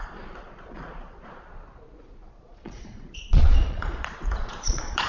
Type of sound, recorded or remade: remade